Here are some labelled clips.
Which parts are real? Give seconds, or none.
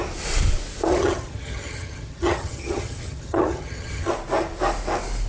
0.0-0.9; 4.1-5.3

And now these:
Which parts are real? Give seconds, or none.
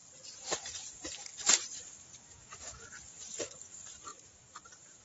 0.0-1.3; 3.0-4.1